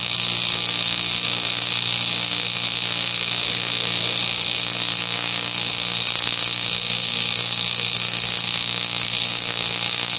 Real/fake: fake